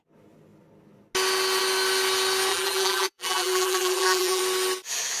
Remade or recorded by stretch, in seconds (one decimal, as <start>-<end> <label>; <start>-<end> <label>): 0.0-2.5 recorded; 2.5-4.4 remade; 4.4-5.2 recorded